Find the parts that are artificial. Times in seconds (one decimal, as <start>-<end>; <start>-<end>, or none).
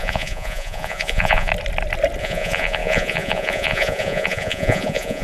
0.0-1.5; 2.2-5.2